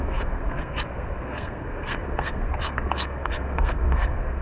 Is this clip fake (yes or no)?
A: yes